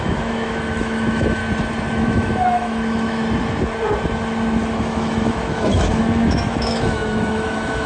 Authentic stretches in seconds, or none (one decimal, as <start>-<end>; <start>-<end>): 1.4-1.9; 3.2-4.7